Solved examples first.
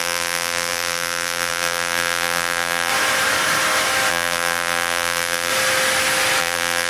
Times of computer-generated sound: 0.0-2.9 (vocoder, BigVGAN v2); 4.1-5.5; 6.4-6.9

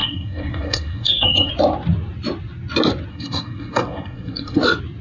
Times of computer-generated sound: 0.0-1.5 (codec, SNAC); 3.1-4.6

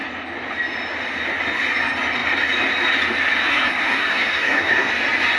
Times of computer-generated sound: 3.5-4.9 (codec, SNAC)

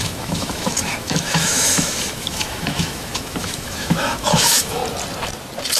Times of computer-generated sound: 0.0-4.8 (autoencoder, DAC-VAE)

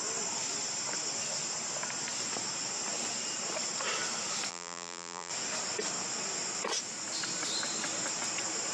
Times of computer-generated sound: 4.5-5.3 (vocoder, BigVGAN v2)